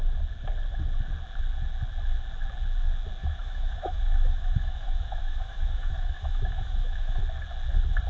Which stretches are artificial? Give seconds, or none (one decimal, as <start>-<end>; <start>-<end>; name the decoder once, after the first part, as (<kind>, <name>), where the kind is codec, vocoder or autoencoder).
3.2-7.2 (autoencoder, DAC-VAE)